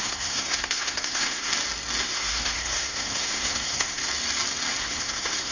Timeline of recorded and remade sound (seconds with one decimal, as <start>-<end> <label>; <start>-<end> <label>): 0.0-1.5 remade; 1.5-2.0 recorded; 2.0-4.0 remade; 4.0-4.8 recorded; 4.8-5.5 remade